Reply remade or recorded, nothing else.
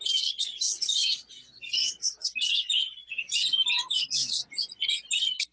recorded